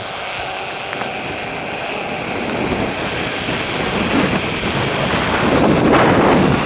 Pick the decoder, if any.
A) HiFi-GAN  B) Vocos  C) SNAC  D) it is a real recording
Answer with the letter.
D